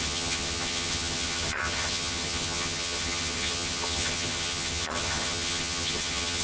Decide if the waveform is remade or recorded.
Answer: remade